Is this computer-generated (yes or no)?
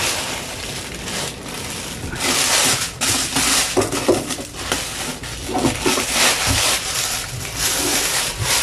no